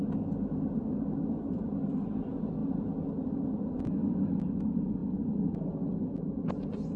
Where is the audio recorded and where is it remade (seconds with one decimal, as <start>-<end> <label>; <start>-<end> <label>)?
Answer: 0.0-7.0 recorded